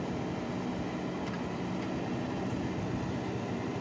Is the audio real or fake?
real